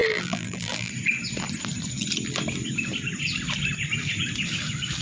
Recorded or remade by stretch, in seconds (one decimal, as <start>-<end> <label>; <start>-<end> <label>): 0.0-0.9 remade; 0.9-5.0 recorded